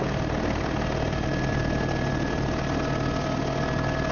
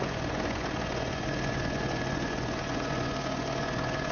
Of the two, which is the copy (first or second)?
second